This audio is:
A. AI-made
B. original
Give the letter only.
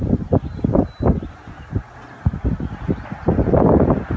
B